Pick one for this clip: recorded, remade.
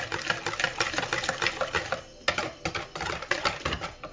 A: recorded